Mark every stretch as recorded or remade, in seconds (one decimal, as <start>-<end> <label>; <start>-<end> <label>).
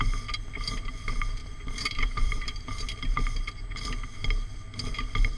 0.0-1.4 recorded; 1.4-2.8 remade; 2.8-5.4 recorded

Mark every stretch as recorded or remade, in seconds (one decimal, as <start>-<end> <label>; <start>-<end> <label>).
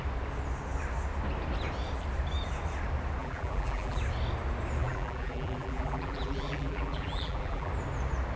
0.0-3.2 recorded; 3.2-4.0 remade; 4.0-4.8 recorded; 4.8-7.7 remade; 7.7-8.4 recorded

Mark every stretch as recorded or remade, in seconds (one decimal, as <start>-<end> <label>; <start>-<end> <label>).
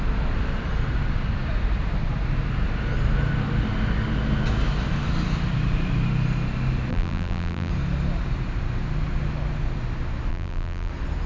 0.0-6.9 recorded; 6.9-7.7 remade; 7.7-10.3 recorded; 10.3-10.9 remade; 10.9-11.3 recorded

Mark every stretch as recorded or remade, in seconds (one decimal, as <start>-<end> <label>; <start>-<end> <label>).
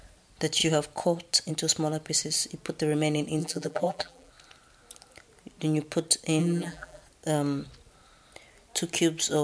0.0-3.4 recorded; 3.4-4.3 remade; 4.3-6.4 recorded; 6.4-7.0 remade; 7.0-9.4 recorded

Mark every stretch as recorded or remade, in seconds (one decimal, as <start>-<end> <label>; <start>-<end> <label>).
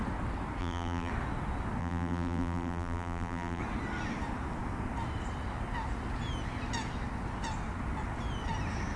0.0-0.6 recorded; 0.6-1.1 remade; 1.1-1.8 recorded; 1.8-3.6 remade; 3.6-9.0 recorded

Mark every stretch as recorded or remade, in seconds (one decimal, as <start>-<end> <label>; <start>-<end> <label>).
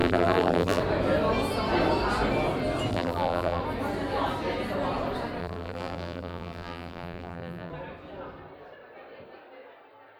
0.0-0.8 remade; 0.8-2.9 recorded; 2.9-3.6 remade; 3.6-5.4 recorded; 5.4-7.7 remade; 7.7-10.2 recorded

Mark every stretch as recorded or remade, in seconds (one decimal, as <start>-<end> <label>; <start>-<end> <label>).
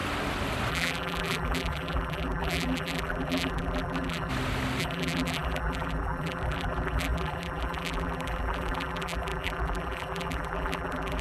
0.0-0.7 recorded; 0.7-4.3 remade; 4.3-4.8 recorded; 4.8-11.2 remade